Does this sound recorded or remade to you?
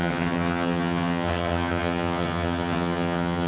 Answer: remade